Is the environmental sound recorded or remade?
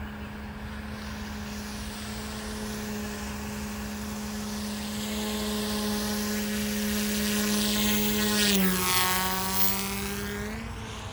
recorded